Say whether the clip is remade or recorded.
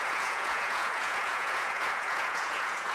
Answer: remade